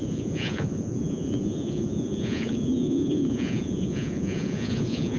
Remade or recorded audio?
remade